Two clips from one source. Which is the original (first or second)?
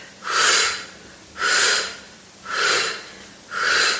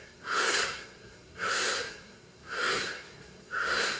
first